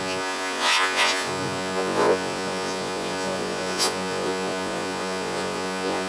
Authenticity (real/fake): fake